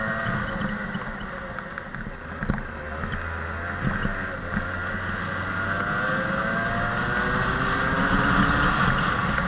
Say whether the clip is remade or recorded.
recorded